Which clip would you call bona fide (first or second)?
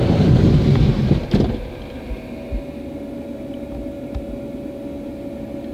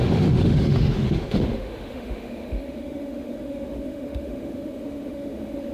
first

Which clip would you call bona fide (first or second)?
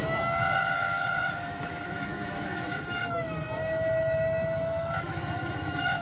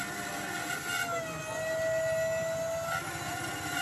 second